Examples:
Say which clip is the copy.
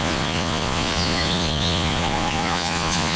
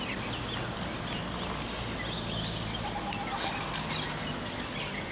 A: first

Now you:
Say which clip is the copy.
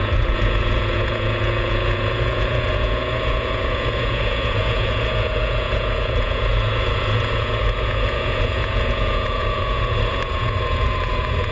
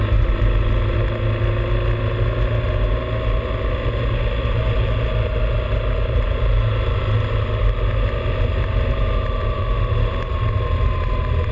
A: first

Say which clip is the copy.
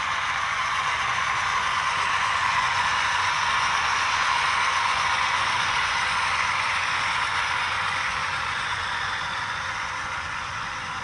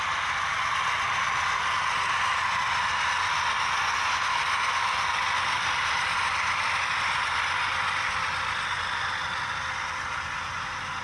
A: first